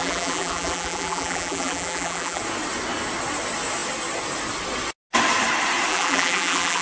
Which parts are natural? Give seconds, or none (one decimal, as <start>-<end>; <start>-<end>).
2.4-5.9